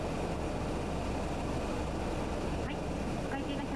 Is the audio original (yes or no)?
yes